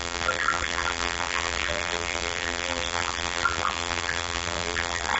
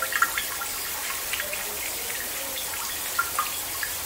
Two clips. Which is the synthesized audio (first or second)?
first